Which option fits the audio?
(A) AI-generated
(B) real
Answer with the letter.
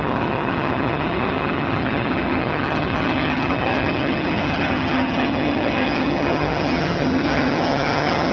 A